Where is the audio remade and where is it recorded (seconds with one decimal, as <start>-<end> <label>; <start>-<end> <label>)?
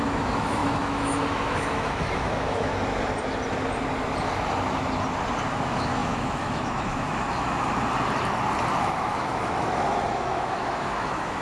0.0-2.7 remade; 2.7-5.5 recorded; 5.5-7.7 remade; 7.7-8.8 recorded; 8.8-11.4 remade